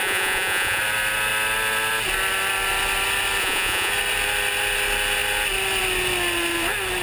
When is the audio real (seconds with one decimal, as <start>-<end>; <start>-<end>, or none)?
0.8-3.4; 3.9-7.0